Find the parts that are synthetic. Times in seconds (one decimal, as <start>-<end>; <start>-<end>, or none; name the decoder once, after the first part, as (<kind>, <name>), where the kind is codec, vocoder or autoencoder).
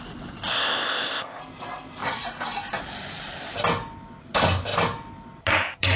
0.5-1.4 (codec, ZipCodec)